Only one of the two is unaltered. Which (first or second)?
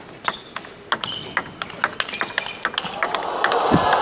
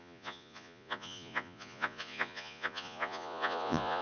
first